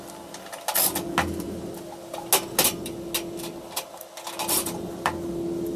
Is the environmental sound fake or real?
real